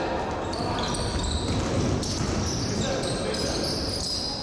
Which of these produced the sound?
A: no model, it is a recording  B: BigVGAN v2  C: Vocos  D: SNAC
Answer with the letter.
A